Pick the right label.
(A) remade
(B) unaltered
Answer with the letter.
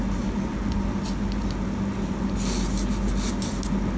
B